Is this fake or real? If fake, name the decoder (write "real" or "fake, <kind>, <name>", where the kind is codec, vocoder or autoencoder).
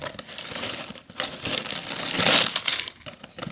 real